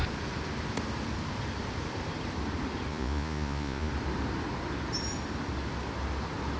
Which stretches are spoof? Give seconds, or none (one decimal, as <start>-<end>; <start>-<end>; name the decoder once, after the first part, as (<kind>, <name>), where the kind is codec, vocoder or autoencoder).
2.9-3.9 (vocoder, Vocos)